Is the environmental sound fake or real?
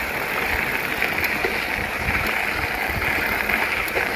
real